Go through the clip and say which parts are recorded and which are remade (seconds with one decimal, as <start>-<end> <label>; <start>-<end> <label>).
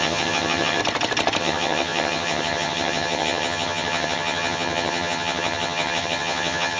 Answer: 0.0-0.8 remade; 0.8-1.4 recorded; 1.4-6.8 remade